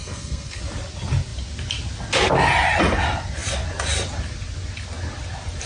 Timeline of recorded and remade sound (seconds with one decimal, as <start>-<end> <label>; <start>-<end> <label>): 0.0-0.6 remade; 0.6-5.7 recorded